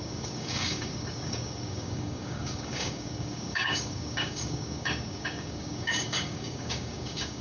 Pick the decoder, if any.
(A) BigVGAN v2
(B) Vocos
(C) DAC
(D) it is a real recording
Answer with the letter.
C